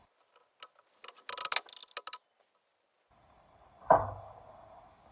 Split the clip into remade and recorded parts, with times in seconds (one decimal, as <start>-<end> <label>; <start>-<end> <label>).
0.0-5.1 recorded